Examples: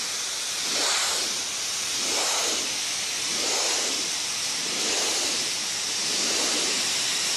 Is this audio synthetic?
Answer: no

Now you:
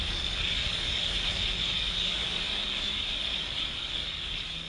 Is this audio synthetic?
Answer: yes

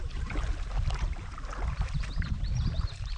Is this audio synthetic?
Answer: yes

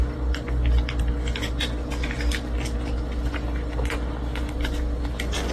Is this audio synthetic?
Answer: no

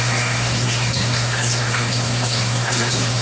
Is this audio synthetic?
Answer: yes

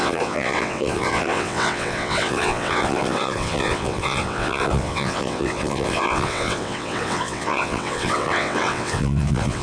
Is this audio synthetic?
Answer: yes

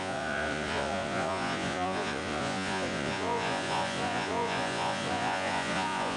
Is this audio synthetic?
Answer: yes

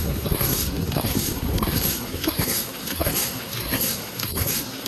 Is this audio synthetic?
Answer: yes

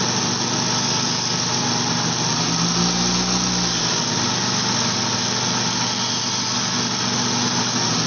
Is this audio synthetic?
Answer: no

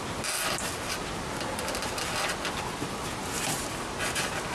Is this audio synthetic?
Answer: no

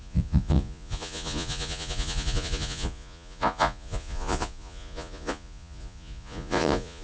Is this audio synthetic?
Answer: yes